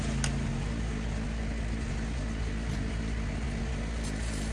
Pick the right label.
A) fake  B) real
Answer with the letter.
B